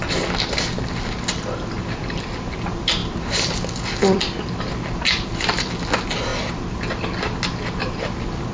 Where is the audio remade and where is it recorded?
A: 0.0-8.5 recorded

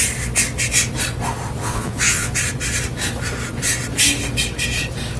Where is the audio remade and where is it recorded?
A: 0.0-1.6 recorded; 1.6-2.3 remade; 2.3-5.2 recorded